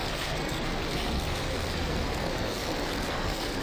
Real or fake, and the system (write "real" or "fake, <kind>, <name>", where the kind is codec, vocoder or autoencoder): fake, codec, SNAC